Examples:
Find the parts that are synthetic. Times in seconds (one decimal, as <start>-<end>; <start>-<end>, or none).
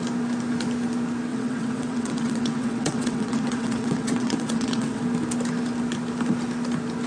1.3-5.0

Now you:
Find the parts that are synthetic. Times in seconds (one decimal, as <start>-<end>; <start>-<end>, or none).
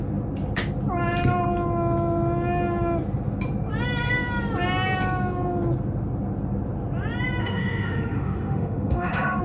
7.4-9.4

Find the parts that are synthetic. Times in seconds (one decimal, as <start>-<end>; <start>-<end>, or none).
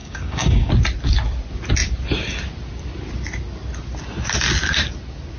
0.0-0.7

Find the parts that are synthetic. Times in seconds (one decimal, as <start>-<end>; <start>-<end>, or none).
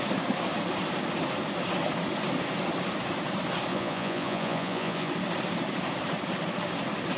3.7-5.1